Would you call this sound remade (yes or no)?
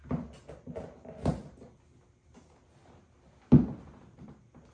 no